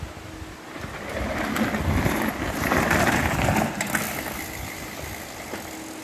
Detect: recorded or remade recorded